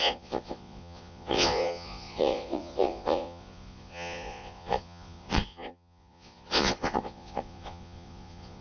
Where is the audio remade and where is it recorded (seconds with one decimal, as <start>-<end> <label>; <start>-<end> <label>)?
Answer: 0.0-8.6 remade